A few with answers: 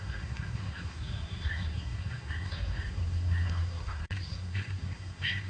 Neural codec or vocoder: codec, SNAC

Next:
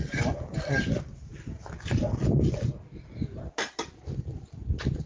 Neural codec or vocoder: none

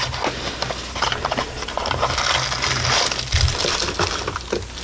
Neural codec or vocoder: none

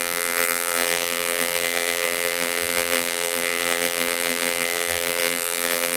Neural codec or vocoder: vocoder, BigVGAN v2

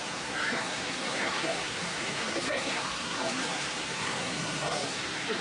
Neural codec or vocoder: codec, SNAC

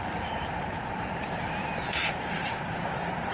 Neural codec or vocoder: vocoder, BigVGAN v2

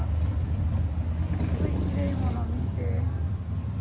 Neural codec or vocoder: none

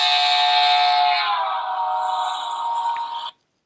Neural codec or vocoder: none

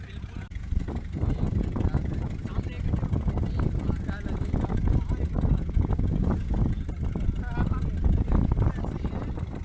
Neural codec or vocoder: none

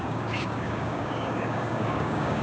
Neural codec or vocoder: codec, DAC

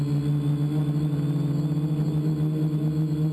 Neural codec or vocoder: none